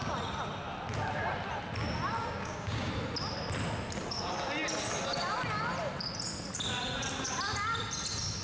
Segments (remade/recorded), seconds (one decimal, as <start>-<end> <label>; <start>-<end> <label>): 0.0-2.2 recorded; 2.2-2.9 remade; 2.9-8.4 recorded